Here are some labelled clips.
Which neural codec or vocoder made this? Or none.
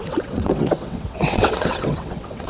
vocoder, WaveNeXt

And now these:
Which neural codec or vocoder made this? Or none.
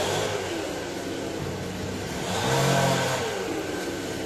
none